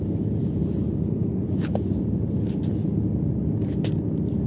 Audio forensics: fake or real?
real